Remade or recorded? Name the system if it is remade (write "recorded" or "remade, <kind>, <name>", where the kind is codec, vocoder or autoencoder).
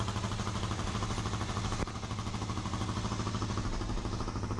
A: recorded